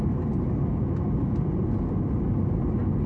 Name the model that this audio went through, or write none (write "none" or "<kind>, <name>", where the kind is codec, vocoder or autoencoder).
none